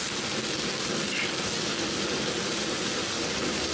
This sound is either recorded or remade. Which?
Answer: recorded